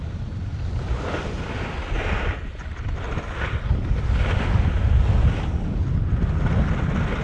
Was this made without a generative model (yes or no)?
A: yes